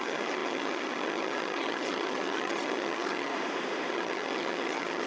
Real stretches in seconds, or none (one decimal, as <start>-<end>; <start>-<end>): 3.3-3.9